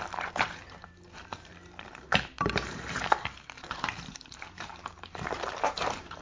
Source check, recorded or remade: remade